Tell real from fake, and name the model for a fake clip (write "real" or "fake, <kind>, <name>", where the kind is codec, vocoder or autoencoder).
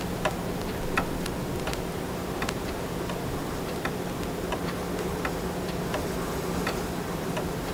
real